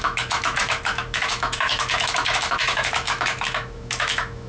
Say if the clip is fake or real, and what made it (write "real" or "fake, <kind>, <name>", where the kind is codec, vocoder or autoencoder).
fake, autoencoder, DAC-VAE